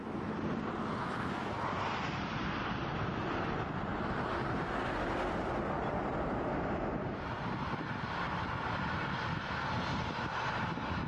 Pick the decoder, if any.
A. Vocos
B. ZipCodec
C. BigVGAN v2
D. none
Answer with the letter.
D